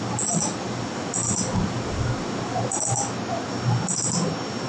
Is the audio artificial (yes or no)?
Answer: no